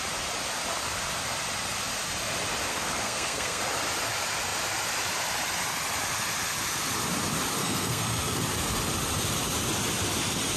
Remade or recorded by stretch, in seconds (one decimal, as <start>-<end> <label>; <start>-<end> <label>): 0.0-2.7 recorded; 2.7-3.6 remade; 3.6-7.6 recorded; 7.6-8.4 remade; 8.4-10.6 recorded